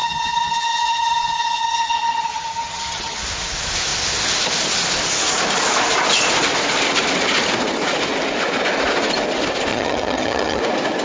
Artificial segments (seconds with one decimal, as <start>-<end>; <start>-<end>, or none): 0.0-3.2; 9.7-10.6